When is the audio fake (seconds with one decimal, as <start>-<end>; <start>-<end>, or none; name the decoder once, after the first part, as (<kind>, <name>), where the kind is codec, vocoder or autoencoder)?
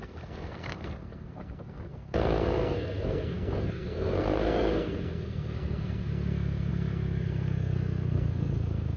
0.0-9.0 (codec, SNAC)